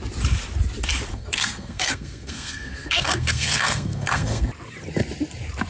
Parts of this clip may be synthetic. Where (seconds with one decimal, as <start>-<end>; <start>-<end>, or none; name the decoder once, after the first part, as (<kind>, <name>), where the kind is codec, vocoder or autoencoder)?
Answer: 1.1-4.5 (codec, SNAC)